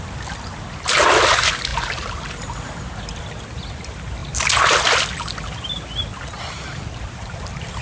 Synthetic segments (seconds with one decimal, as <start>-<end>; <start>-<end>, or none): none